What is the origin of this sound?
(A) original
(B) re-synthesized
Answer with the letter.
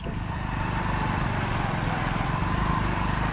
A